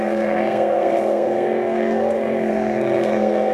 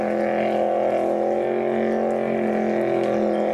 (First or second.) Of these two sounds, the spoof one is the first